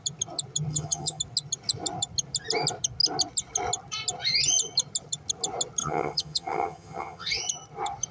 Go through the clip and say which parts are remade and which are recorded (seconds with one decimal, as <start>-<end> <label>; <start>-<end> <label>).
0.0-0.7 recorded; 0.7-1.2 remade; 1.2-5.8 recorded; 5.8-7.3 remade; 7.3-8.1 recorded